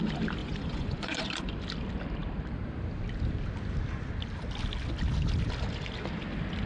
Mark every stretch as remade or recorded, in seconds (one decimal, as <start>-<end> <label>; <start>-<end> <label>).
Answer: 0.0-0.4 recorded; 0.4-1.2 remade; 1.2-6.7 recorded